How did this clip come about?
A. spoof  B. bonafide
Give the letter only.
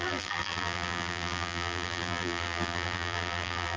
A